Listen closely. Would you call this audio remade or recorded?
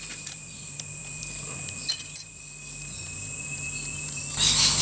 recorded